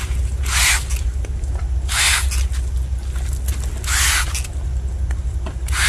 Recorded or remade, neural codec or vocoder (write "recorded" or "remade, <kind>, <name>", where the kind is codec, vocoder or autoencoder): recorded